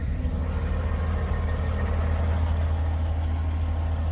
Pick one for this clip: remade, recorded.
recorded